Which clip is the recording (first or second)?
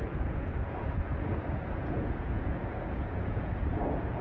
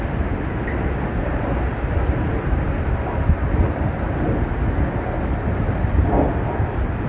second